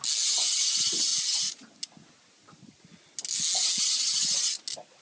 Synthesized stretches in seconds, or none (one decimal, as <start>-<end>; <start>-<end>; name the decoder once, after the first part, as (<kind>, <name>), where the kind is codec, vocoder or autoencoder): none